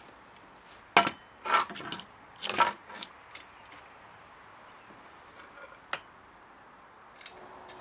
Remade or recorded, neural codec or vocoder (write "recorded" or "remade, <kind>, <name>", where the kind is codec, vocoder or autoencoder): recorded